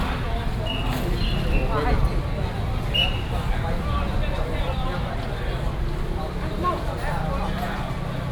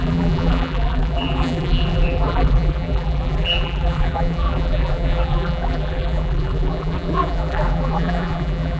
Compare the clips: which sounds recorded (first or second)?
first